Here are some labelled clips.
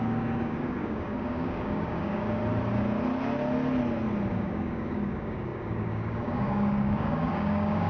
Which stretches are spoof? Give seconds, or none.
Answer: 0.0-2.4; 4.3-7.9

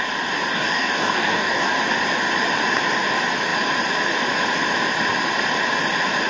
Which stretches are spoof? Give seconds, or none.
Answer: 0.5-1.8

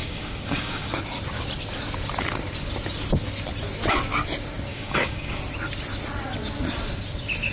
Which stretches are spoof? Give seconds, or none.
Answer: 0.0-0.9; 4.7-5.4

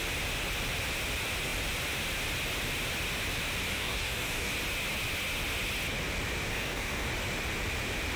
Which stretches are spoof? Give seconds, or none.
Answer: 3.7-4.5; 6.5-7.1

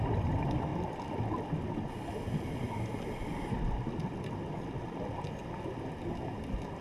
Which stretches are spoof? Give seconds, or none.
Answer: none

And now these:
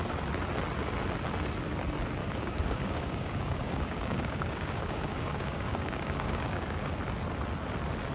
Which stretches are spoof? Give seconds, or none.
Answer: 2.2-7.0

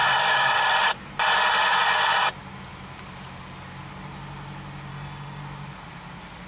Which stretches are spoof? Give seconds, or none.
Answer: 0.0-0.7; 4.9-5.4